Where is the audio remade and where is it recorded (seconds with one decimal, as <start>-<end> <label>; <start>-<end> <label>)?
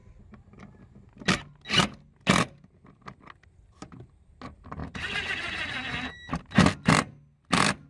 0.0-7.9 recorded